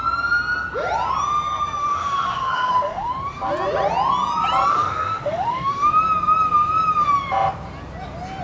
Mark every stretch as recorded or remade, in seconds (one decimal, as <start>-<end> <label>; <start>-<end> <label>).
0.0-1.8 recorded; 1.8-3.1 remade; 3.1-4.7 recorded; 4.7-5.9 remade; 5.9-8.4 recorded